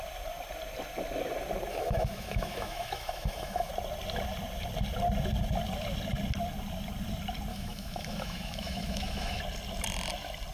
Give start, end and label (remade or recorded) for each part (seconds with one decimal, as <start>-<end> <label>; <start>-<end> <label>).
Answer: 0.0-1.7 recorded; 1.7-3.7 remade; 3.7-7.5 recorded; 7.5-9.4 remade; 9.4-10.5 recorded